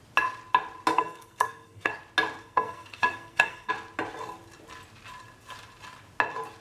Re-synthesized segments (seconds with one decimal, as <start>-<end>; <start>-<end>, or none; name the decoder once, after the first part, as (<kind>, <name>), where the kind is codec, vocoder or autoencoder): 0.9-1.9 (codec, SNAC); 2.4-3.7